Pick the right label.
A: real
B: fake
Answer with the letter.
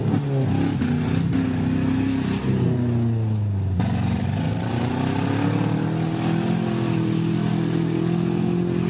A